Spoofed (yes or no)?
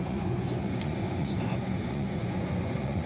yes